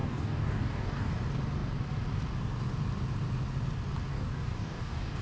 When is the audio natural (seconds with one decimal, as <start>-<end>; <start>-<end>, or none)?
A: 1.1-4.1

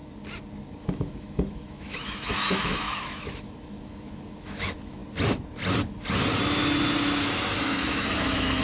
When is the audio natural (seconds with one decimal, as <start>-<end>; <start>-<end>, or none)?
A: 0.0-0.8; 5.0-7.6

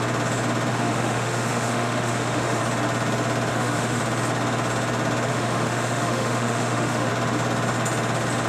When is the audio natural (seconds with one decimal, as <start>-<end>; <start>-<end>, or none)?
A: 0.0-0.7; 2.6-3.5; 4.0-5.3; 7.1-8.5

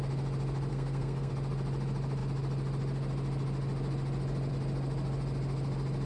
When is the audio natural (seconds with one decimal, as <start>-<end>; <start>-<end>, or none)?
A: 0.0-0.7; 1.3-6.1

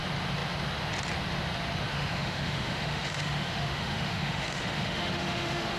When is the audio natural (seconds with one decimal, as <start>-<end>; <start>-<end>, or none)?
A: 0.0-1.9

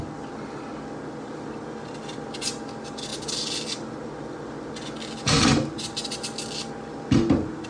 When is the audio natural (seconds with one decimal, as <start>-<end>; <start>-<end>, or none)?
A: 0.0-7.7